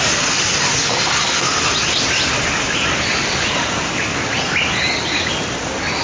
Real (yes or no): yes